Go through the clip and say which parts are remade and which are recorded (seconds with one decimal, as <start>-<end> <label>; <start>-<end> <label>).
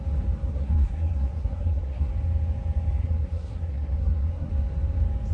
0.0-0.5 recorded; 0.5-2.1 remade; 2.1-3.0 recorded; 3.0-4.5 remade; 4.5-5.3 recorded